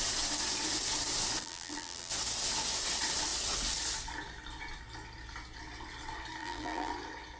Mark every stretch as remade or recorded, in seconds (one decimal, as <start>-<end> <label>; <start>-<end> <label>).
0.0-1.4 recorded; 1.4-2.1 remade; 2.1-6.4 recorded; 6.4-6.9 remade; 6.9-7.4 recorded